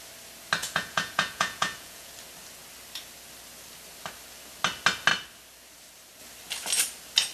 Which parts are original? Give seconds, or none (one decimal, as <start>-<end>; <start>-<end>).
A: 0.0-0.6; 2.1-7.3